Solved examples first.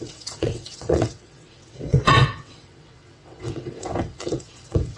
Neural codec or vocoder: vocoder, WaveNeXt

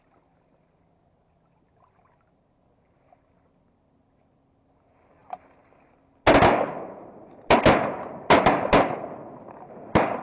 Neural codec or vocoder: none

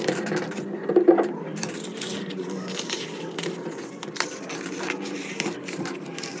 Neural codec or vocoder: vocoder, BigVGAN v2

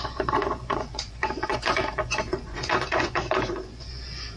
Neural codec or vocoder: vocoder, Vocos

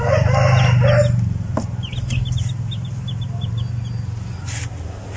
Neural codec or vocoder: none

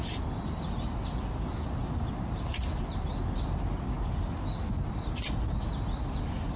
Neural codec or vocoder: none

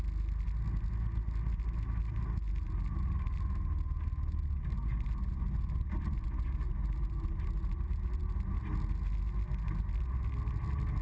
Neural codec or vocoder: none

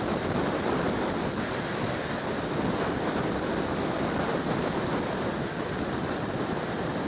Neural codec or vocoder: none